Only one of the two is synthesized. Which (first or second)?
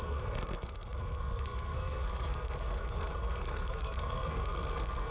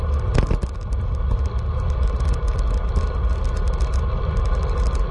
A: first